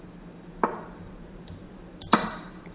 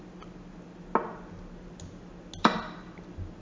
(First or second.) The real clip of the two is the second